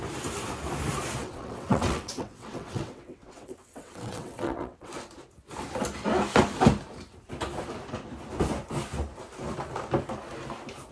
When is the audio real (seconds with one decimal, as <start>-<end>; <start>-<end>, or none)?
0.0-1.2; 4.9-10.9